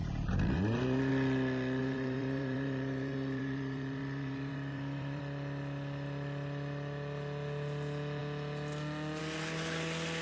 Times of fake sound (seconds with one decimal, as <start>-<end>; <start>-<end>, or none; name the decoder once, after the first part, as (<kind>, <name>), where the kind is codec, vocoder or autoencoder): 0.0-1.1 (vocoder, BigVGAN v2); 1.8-5.2